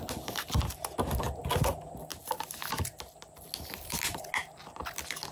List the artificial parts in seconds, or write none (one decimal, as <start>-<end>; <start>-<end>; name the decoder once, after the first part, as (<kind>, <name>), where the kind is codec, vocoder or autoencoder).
none